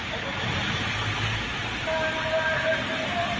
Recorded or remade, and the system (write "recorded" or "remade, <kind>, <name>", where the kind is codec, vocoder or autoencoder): recorded